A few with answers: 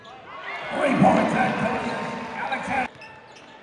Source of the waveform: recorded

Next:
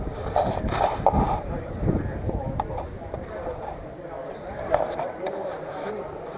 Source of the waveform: remade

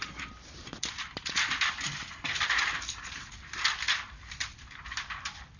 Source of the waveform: remade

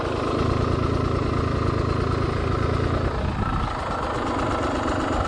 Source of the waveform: recorded